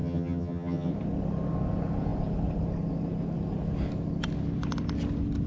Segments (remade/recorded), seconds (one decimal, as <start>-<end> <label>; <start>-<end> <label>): 0.0-0.9 remade; 0.9-5.5 recorded